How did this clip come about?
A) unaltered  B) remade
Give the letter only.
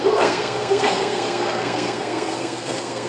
B